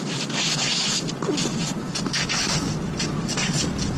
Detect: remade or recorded remade